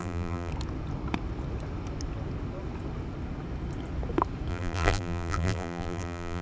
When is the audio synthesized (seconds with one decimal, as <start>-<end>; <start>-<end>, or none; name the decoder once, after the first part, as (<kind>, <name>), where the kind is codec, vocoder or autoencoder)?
0.0-0.5 (vocoder, BigVGAN v2); 4.5-6.4